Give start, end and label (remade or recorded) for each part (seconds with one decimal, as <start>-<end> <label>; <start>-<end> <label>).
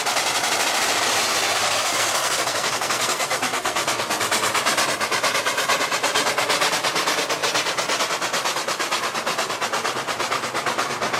0.0-1.6 recorded; 1.6-4.2 remade; 4.2-11.2 recorded